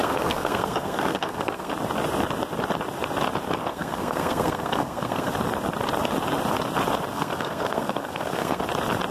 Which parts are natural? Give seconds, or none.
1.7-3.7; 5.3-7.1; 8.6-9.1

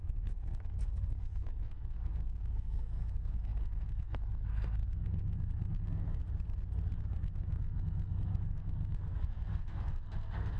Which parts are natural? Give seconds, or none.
6.2-7.1

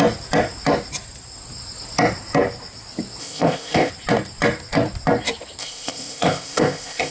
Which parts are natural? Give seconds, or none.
0.0-3.2; 3.9-5.6

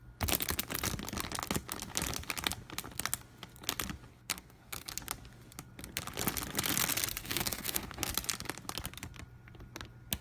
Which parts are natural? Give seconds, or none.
0.0-4.1; 4.9-7.2; 8.1-10.2

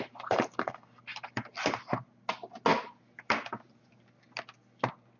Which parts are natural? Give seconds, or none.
0.0-5.2

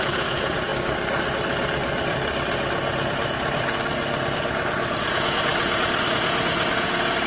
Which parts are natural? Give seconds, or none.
0.7-5.1; 5.5-6.1

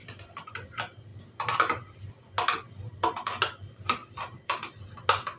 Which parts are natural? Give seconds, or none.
0.5-4.0; 4.8-5.4